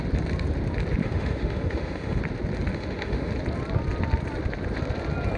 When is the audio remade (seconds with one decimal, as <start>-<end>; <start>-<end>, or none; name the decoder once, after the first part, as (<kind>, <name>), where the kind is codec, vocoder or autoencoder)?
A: 1.0-2.2 (autoencoder, DAC-VAE); 2.7-3.3